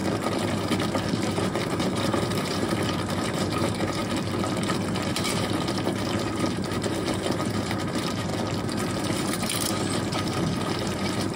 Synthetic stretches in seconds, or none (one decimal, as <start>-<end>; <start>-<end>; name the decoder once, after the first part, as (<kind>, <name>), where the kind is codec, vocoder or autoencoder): 1.1-4.0 (vocoder, BigVGAN v2); 5.1-8.3; 9.0-11.4